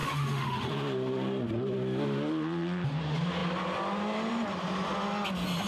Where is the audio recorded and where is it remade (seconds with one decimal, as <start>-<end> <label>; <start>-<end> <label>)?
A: 0.0-0.7 remade; 0.7-5.7 recorded